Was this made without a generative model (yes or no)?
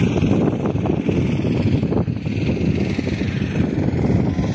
yes